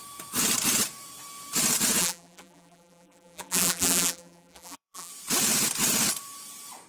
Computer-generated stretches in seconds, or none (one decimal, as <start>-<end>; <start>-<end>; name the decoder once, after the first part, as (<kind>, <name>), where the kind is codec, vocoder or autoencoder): 2.0-5.1 (vocoder, BigVGAN v2)